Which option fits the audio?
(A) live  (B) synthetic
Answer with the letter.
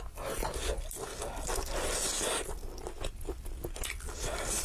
A